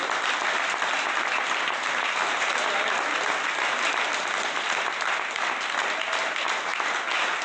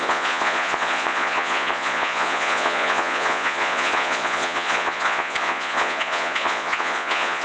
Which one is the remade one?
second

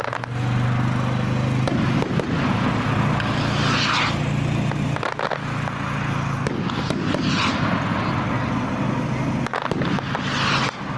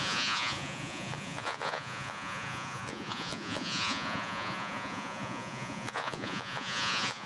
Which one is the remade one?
second